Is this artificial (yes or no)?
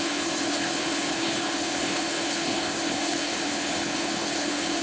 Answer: yes